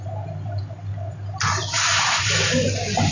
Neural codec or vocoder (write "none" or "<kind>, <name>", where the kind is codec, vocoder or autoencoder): none